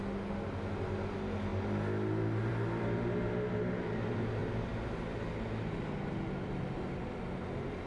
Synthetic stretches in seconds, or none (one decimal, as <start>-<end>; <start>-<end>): none